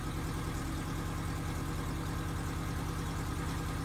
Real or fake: real